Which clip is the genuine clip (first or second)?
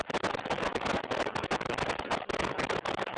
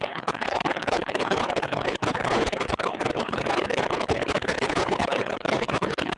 first